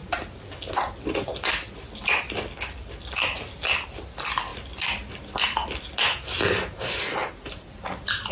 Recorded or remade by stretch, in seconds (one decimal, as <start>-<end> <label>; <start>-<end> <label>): 0.0-8.3 recorded